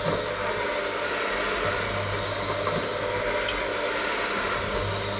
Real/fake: real